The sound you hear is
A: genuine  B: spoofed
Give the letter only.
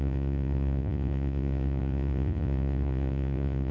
B